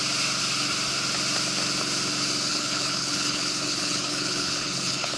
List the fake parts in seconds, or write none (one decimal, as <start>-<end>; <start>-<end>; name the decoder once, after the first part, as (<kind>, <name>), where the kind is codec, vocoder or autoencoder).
2.5-5.2 (codec, HILCodec)